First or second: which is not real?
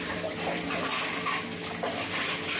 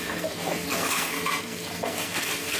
second